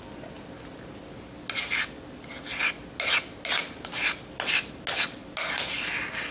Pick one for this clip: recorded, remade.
recorded